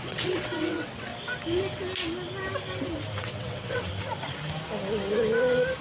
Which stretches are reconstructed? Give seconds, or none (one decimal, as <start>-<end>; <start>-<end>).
0.0-1.1; 3.2-3.9